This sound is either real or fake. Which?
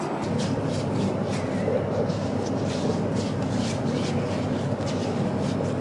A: real